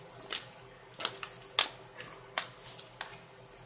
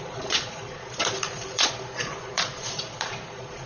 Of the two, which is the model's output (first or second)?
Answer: second